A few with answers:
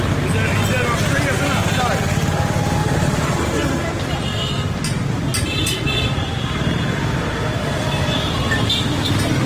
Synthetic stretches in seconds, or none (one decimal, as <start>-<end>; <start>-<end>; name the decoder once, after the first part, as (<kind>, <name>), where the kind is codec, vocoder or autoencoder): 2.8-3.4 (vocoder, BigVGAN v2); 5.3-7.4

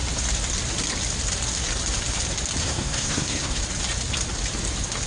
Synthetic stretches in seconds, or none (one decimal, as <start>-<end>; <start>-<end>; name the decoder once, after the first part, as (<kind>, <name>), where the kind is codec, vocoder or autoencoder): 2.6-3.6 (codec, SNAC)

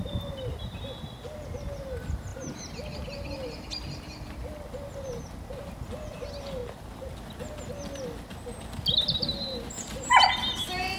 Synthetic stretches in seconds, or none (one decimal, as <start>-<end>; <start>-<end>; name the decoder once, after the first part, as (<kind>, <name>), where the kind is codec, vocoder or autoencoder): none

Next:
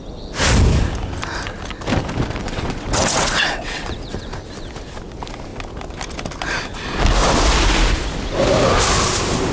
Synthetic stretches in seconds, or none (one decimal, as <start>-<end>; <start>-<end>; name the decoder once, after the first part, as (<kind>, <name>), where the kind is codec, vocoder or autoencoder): 2.4-4.3 (vocoder, WaveNeXt)

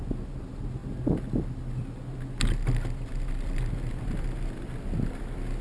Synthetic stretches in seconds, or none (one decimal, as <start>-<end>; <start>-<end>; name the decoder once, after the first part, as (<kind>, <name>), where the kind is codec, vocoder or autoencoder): none

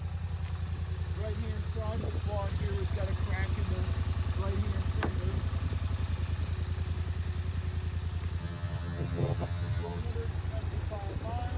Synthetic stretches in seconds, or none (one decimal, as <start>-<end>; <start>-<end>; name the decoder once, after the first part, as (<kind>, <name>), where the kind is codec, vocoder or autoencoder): 8.4-10.0 (vocoder, HiFi-GAN)

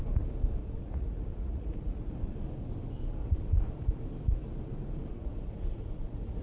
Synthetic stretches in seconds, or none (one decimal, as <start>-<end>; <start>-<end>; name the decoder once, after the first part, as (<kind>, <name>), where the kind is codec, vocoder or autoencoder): 0.6-2.1 (vocoder, Vocos); 3.2-3.7; 5.1-6.4

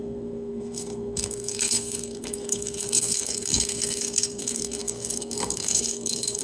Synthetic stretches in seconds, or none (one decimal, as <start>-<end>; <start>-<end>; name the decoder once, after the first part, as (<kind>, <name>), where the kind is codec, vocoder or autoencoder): 0.0-6.4 (codec, SNAC)